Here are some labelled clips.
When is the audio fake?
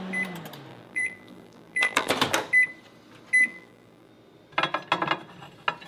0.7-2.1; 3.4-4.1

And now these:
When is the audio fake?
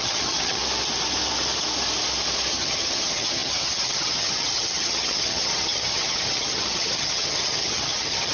0.0-0.6; 2.5-8.3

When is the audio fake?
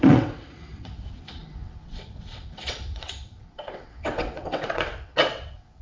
0.0-5.8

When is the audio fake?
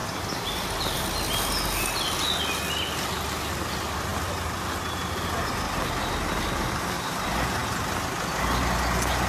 none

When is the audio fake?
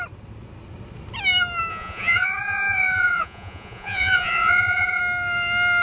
1.7-5.0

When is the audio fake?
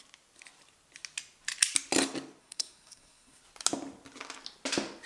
2.4-3.4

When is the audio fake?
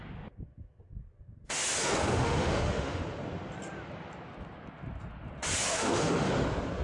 2.0-3.0; 5.7-6.3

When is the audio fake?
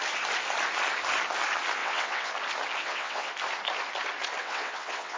1.8-2.3; 2.8-3.3; 4.4-5.2